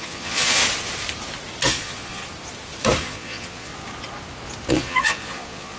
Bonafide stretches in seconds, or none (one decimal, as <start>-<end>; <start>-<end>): 0.6-1.7; 2.2-3.0; 3.7-4.7